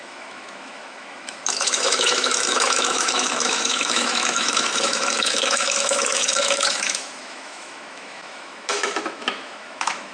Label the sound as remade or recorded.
remade